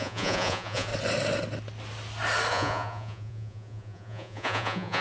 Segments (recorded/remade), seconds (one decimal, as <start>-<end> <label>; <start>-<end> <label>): 0.0-0.9 remade; 0.9-2.5 recorded; 2.5-5.0 remade